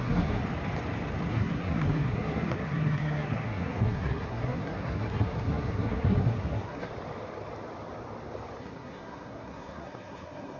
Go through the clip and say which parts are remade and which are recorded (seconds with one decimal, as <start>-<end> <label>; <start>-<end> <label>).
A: 0.0-0.4 remade; 0.4-1.3 recorded; 1.3-6.9 remade; 6.9-8.6 recorded; 8.6-10.6 remade